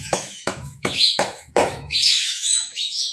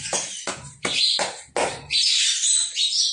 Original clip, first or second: second